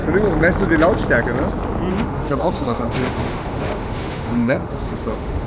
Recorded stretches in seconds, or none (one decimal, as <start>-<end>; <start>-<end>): 0.0-1.9